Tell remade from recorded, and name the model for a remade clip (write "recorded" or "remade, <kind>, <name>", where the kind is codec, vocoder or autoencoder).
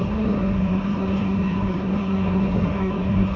remade, codec, SNAC